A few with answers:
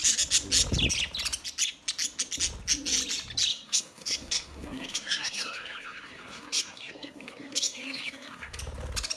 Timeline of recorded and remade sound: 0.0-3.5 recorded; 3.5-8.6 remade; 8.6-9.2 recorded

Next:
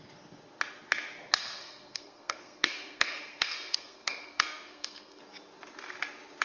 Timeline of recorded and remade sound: 0.0-1.4 recorded; 1.4-5.2 remade; 5.2-6.4 recorded

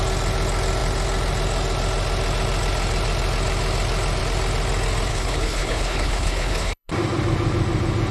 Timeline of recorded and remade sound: 0.0-5.1 recorded; 5.1-6.9 remade; 6.9-8.1 recorded

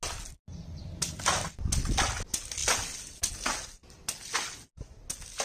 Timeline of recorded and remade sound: 0.0-5.4 recorded

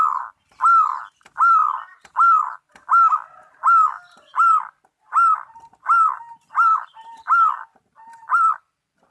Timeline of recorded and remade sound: 0.0-9.1 recorded

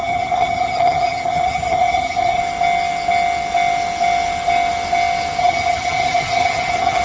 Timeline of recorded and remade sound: 0.0-2.4 remade; 2.4-5.4 recorded; 5.4-7.0 remade